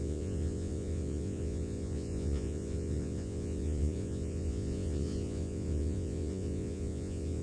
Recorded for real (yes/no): no